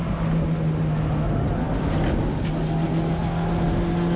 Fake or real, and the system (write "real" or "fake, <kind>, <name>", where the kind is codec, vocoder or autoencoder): real